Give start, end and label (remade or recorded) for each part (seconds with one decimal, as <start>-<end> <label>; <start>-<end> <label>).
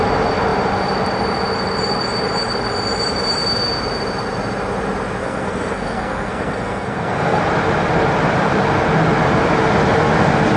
0.0-5.2 recorded; 5.2-7.4 remade; 7.4-10.6 recorded